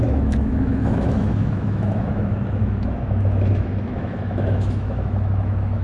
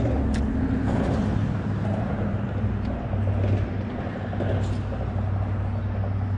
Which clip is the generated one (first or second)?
first